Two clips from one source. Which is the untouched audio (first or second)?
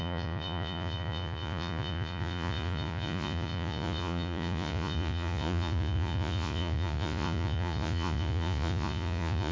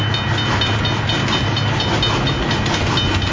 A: second